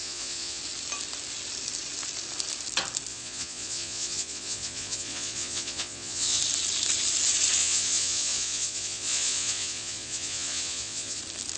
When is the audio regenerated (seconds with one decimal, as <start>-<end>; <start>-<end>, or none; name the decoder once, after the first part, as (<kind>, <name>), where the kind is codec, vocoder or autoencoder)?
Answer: 0.0-0.6 (vocoder, Vocos); 3.1-6.4; 7.6-11.2